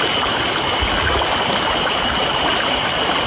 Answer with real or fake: real